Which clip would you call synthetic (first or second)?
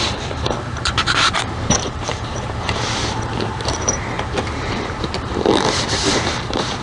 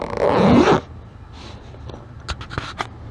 first